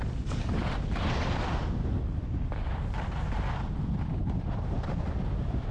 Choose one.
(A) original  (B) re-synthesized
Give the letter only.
A